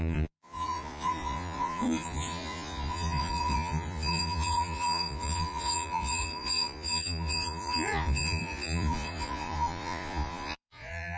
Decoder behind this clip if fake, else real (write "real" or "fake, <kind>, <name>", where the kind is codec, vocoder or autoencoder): fake, vocoder, Vocos